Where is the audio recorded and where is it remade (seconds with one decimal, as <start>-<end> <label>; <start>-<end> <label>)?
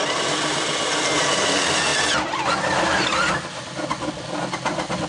0.0-5.1 recorded